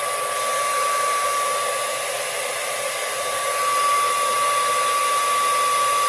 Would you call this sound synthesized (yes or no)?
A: no